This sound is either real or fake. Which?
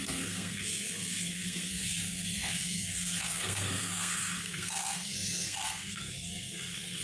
fake